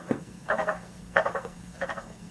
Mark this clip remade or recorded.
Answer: remade